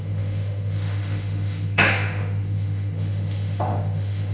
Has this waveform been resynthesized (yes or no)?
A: yes